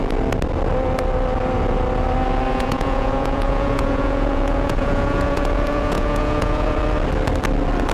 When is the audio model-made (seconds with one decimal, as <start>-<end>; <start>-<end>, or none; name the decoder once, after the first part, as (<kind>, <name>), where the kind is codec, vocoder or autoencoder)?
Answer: 2.5-6.8 (vocoder, Vocos)